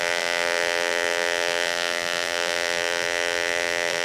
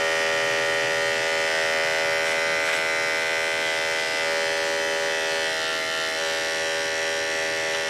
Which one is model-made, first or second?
first